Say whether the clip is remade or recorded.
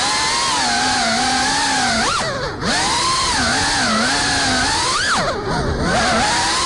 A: recorded